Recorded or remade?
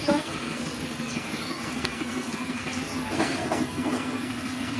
remade